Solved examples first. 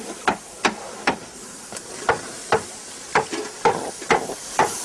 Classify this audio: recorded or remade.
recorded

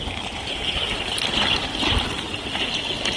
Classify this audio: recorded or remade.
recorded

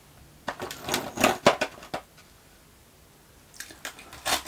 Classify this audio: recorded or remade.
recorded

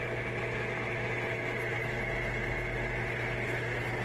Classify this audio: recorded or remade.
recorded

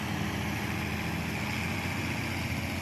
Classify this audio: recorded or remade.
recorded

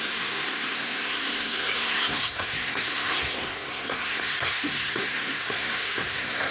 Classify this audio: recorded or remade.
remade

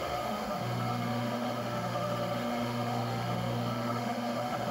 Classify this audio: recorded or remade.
remade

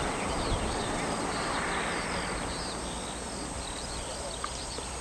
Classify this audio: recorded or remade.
recorded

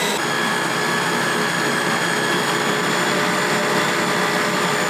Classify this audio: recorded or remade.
recorded